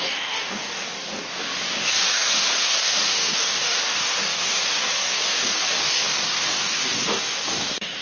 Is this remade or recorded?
remade